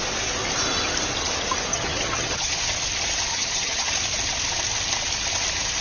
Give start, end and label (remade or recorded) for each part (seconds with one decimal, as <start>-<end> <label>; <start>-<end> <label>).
0.0-1.7 recorded; 1.7-2.5 remade; 2.5-3.3 recorded; 3.3-3.9 remade; 3.9-5.8 recorded